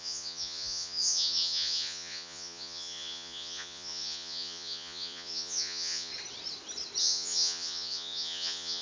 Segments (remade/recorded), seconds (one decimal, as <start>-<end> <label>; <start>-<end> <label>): 0.0-6.1 remade; 6.1-7.0 recorded; 7.0-8.8 remade